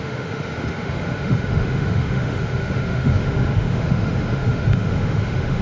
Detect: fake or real fake